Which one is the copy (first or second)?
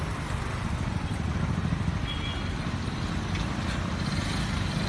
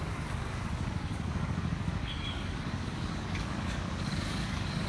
second